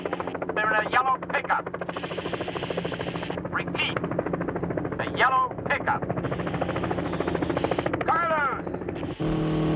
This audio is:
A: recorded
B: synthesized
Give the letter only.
A